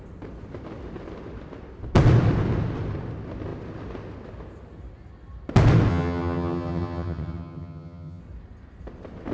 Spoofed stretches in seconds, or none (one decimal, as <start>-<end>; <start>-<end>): 5.9-8.2